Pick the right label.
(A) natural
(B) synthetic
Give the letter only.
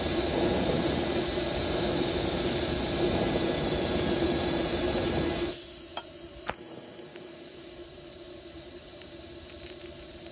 B